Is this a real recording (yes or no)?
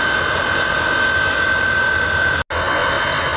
yes